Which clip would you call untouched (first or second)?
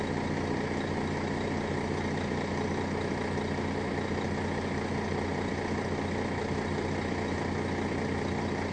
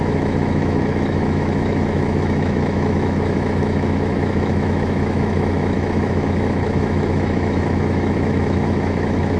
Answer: first